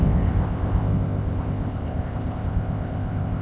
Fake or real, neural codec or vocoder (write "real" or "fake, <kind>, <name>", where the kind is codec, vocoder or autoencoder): fake, codec, ZipCodec